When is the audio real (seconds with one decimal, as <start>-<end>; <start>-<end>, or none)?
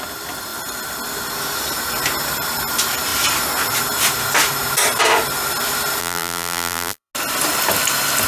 0.0-6.0; 7.1-8.3